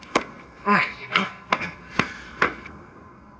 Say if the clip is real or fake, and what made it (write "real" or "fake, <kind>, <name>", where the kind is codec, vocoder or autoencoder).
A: fake, codec, SNAC